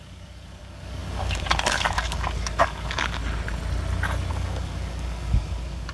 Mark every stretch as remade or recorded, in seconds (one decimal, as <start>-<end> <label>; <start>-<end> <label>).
0.0-3.2 remade; 3.2-4.3 recorded; 4.3-5.9 remade